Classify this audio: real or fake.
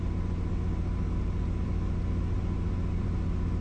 real